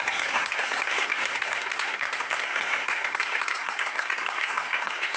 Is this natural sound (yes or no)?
no